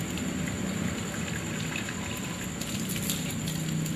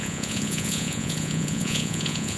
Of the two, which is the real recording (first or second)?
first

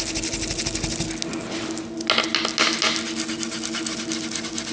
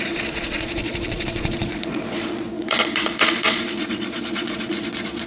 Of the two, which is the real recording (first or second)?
first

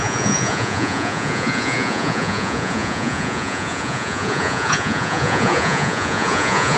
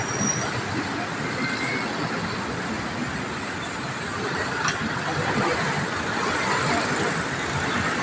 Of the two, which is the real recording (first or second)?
second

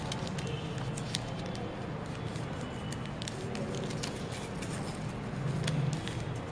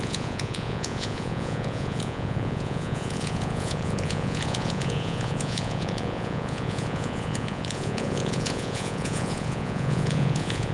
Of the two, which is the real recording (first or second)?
first